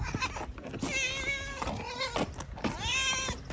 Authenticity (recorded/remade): recorded